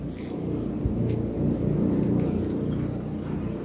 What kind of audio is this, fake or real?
real